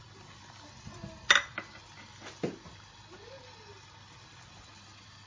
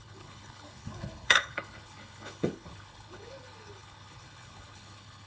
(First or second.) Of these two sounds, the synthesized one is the second